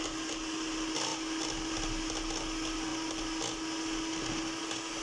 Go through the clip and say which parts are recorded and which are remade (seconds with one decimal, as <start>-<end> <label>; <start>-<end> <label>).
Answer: 0.0-5.0 recorded